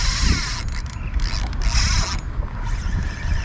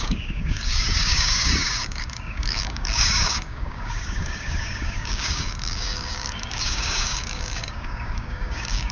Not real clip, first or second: second